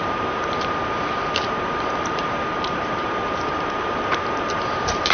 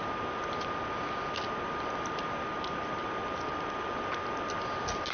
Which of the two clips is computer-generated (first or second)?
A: first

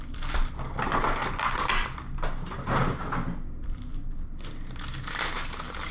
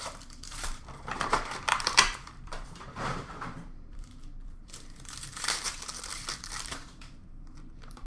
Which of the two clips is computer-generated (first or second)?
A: second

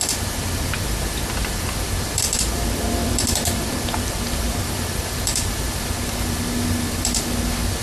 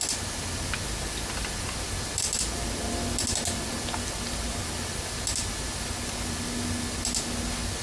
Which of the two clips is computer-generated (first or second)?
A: first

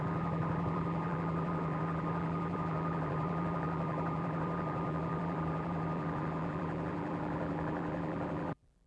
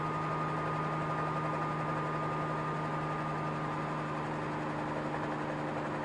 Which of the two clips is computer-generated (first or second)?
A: first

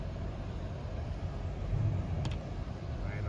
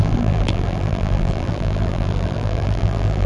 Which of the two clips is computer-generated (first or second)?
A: second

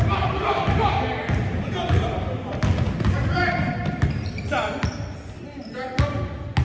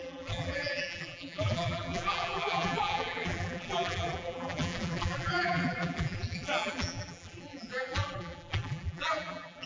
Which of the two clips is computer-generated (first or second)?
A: second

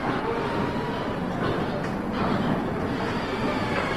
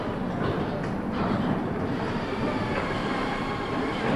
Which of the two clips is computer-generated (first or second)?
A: second